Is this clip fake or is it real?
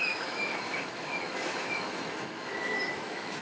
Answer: fake